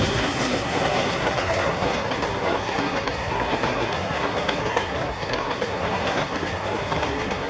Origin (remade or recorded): remade